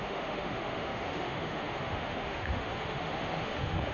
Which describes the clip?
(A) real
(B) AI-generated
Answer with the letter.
B